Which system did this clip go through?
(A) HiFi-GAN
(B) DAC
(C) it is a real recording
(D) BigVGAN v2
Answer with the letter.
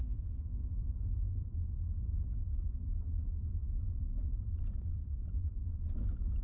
D